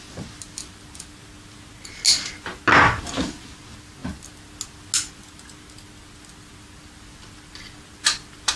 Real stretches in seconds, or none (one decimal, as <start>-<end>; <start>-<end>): 0.0-8.6

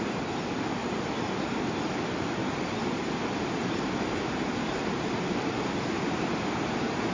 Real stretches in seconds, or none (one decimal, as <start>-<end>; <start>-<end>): 0.0-0.8; 1.5-2.4; 6.2-7.1

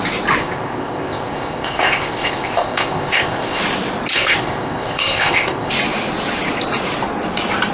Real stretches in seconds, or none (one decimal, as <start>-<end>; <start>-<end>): 0.0-0.4; 3.6-4.1; 5.7-7.7